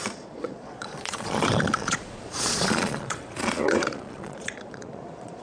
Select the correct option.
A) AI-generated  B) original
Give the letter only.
A